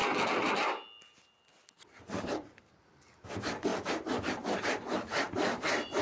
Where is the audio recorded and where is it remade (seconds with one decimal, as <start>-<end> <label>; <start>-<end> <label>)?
0.0-3.7 recorded; 3.7-6.0 remade